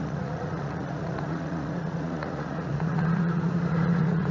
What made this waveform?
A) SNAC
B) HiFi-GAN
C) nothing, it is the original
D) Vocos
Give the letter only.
D